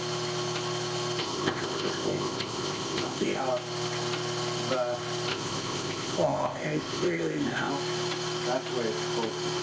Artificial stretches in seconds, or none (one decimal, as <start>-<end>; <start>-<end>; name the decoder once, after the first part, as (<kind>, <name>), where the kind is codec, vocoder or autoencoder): 1.2-3.4 (codec, ZipCodec); 5.3-7.7